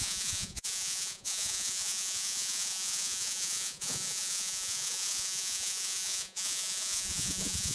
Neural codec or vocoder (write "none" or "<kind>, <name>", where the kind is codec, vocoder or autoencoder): vocoder, Vocos